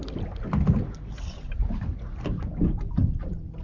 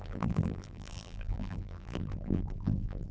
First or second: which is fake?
second